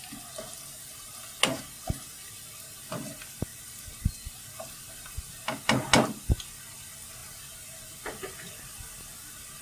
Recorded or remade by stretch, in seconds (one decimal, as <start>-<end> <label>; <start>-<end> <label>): 0.0-9.6 recorded